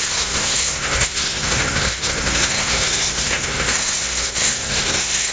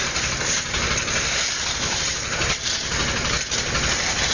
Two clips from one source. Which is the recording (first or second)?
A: second